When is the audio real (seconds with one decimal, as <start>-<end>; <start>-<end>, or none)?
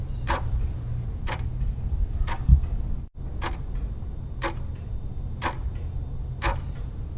2.5-6.8